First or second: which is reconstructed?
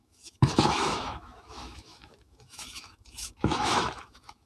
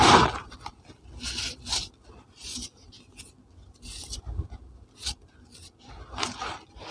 first